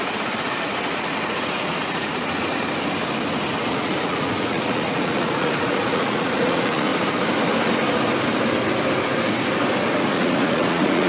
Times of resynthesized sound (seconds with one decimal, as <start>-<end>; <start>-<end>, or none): 0.0-2.5; 3.6-6.9; 10.0-11.1